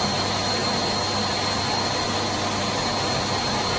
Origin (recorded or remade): recorded